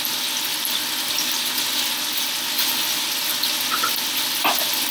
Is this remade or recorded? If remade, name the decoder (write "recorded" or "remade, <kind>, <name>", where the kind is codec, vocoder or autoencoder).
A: recorded